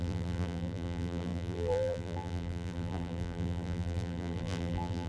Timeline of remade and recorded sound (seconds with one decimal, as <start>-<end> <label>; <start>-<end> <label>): 0.0-5.1 remade